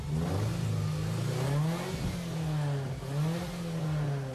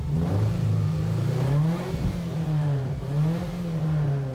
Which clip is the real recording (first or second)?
first